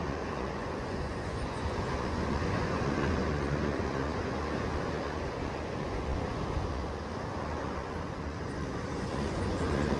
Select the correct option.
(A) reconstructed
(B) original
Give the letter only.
A